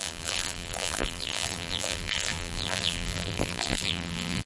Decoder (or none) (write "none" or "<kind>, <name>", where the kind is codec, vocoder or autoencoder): vocoder, BigVGAN v2